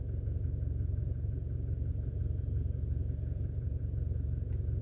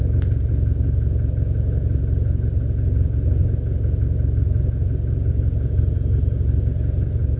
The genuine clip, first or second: second